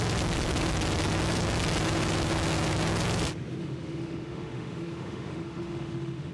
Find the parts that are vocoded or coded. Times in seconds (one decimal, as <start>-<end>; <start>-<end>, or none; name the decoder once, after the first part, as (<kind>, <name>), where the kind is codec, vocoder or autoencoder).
3.6-6.3 (autoencoder, DAC-VAE)